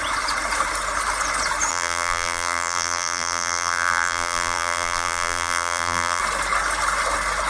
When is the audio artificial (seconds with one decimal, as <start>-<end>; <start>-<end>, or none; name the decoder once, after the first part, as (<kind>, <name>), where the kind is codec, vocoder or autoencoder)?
1.7-6.2 (vocoder, BigVGAN v2)